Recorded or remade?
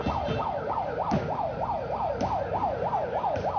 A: recorded